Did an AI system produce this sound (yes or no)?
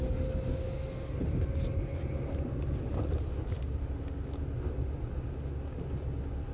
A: no